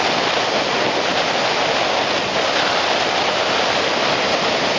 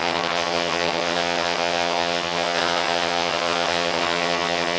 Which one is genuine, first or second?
first